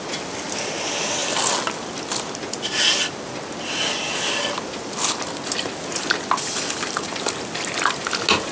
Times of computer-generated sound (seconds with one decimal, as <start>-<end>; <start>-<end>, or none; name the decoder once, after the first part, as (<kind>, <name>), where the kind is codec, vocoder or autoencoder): none